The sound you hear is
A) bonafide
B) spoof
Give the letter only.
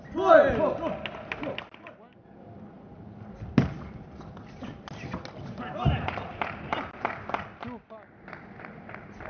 A